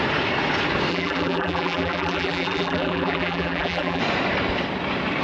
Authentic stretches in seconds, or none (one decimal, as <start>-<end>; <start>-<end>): 0.0-0.9; 4.0-5.2